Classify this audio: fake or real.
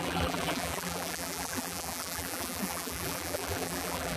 fake